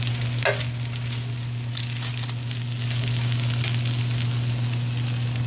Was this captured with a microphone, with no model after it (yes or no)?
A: yes